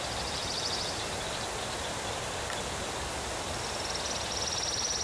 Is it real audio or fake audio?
real